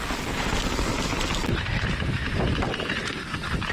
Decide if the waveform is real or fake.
real